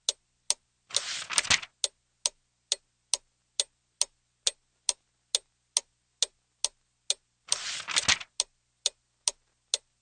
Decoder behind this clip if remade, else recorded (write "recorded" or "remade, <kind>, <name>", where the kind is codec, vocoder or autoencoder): recorded